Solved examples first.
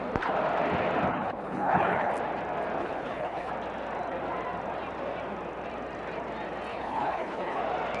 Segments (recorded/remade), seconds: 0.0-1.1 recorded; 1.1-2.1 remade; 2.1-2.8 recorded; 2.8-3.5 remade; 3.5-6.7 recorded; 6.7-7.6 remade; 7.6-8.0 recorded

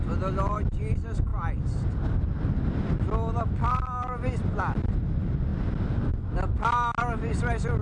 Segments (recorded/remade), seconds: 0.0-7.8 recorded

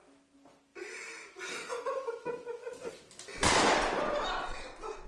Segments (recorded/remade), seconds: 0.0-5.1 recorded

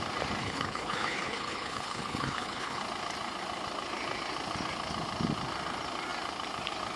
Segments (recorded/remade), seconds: 0.0-0.4 recorded; 0.4-2.8 remade; 2.8-7.0 recorded

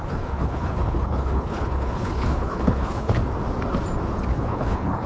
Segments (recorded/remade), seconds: 0.0-3.1 remade; 3.1-4.3 recorded; 4.3-5.1 remade

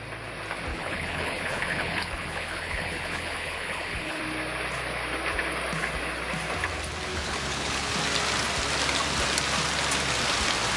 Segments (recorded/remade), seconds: 0.0-0.7 recorded; 0.7-4.2 remade; 4.2-7.1 recorded; 7.1-7.9 remade; 7.9-10.8 recorded